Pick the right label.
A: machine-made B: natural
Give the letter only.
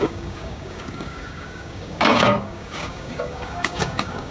A